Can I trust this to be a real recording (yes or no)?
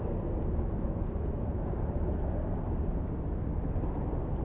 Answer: yes